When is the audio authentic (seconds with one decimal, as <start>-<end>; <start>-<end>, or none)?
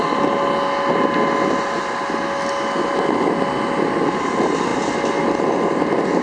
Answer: 0.0-6.2